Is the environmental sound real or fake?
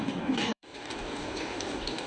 fake